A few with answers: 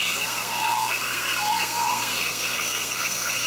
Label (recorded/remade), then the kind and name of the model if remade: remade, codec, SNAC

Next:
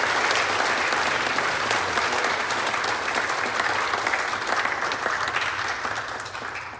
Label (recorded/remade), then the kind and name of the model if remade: recorded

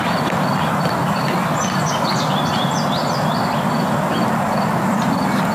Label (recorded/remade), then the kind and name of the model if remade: recorded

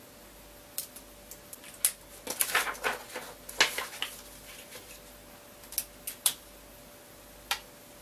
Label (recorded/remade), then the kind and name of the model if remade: recorded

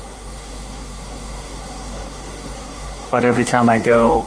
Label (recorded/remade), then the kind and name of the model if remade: remade, codec, SNAC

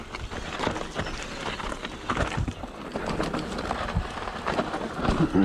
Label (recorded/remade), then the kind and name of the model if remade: recorded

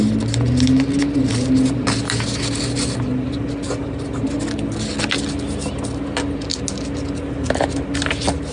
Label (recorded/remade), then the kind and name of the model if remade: recorded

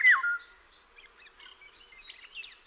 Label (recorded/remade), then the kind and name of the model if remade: recorded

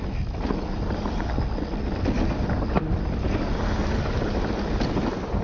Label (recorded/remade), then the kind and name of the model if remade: recorded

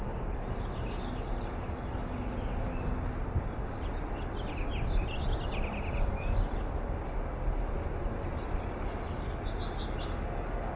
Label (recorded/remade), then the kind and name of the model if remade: recorded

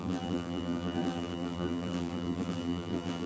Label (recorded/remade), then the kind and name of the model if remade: remade, vocoder, BigVGAN v2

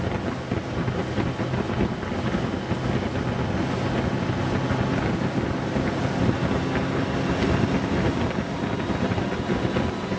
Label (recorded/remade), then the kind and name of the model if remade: recorded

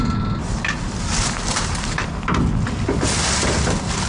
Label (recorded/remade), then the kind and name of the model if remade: recorded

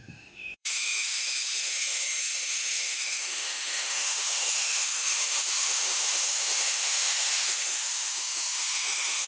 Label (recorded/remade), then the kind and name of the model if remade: remade, autoencoder, DAC-VAE